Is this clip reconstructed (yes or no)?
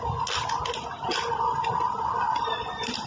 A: no